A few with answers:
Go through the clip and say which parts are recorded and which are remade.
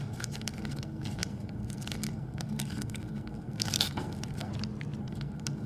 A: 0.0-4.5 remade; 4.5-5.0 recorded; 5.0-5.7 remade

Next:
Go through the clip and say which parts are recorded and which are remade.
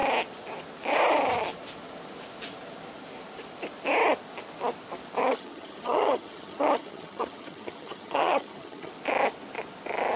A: 0.0-5.2 recorded; 5.2-8.9 remade; 8.9-10.2 recorded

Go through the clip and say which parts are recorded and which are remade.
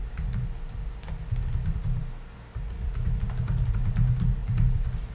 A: 0.0-5.1 recorded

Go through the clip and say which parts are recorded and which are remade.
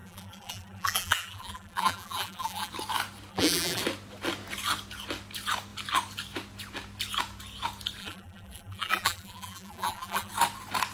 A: 0.0-2.7 remade; 2.7-3.3 recorded; 3.3-3.8 remade; 3.8-8.0 recorded; 8.0-10.3 remade; 10.3-10.9 recorded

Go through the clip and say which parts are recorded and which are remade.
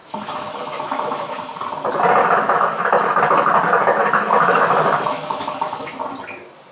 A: 0.0-1.4 remade; 1.4-2.2 recorded; 2.2-3.2 remade; 3.2-4.0 recorded; 4.0-5.9 remade; 5.9-6.7 recorded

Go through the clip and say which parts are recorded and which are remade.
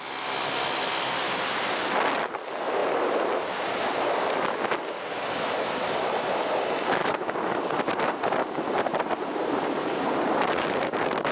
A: 0.0-7.0 recorded; 7.0-11.3 remade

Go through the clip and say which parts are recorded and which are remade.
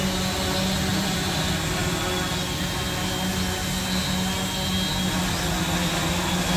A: 0.0-0.9 recorded; 0.9-1.4 remade; 1.4-6.6 recorded